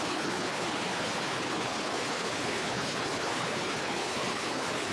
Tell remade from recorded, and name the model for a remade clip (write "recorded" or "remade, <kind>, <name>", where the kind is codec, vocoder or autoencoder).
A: remade, codec, HILCodec